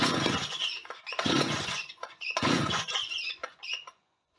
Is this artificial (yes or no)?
yes